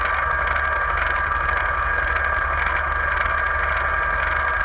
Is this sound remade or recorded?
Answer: recorded